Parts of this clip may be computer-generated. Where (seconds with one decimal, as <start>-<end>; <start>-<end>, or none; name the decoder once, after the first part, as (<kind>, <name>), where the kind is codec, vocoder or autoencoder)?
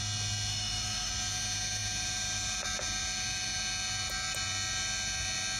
0.5-1.1 (autoencoder, DAC-VAE)